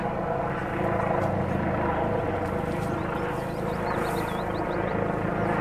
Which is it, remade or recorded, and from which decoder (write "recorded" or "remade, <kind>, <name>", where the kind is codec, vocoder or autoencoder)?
recorded